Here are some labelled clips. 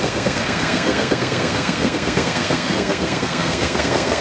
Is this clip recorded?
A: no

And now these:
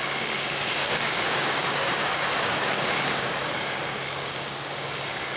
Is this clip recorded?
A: no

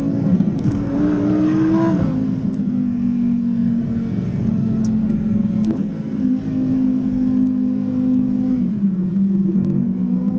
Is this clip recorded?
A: no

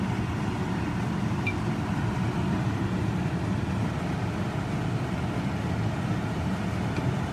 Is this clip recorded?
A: yes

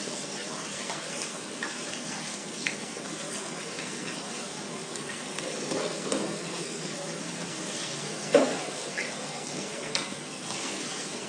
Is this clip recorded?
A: no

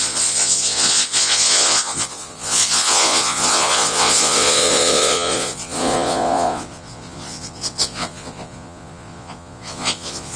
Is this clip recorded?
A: no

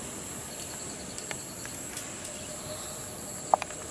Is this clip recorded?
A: yes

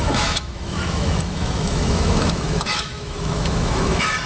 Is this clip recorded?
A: no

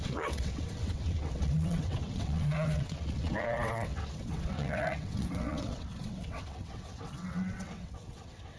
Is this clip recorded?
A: no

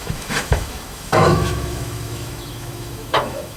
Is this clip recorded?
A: no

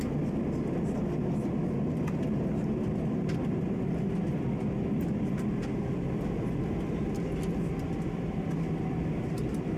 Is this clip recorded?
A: yes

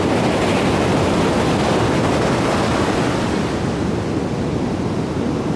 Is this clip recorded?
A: yes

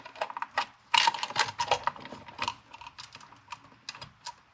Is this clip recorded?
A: yes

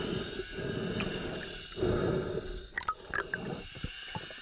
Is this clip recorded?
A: yes